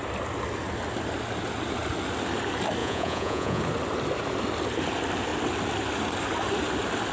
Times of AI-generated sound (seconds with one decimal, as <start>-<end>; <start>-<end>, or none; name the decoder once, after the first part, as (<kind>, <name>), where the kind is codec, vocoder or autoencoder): 2.8-3.6 (vocoder, Vocos)